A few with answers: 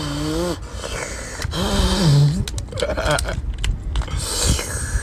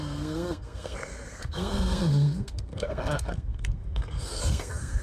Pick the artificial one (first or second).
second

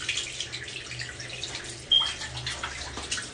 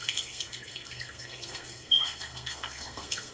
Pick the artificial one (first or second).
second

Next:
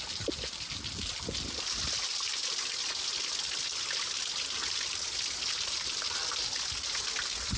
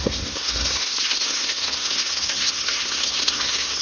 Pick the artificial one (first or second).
second